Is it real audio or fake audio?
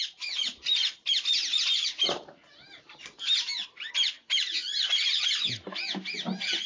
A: real